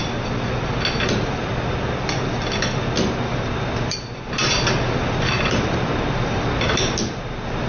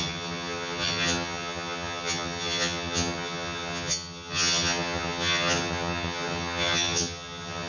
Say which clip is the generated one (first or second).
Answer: second